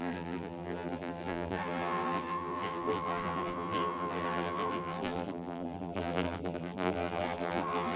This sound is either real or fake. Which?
fake